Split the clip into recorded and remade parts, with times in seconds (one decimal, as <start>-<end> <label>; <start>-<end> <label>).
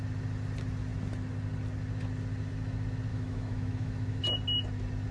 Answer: 0.0-3.1 recorded; 3.1-4.2 remade; 4.2-5.1 recorded